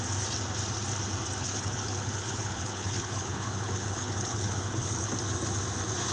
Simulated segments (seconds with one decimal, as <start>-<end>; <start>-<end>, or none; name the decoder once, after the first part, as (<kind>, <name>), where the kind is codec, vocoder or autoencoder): 1.4-5.1 (codec, HILCodec)